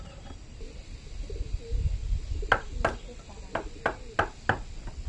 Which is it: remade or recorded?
recorded